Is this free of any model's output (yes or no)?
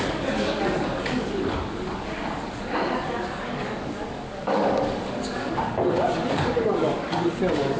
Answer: no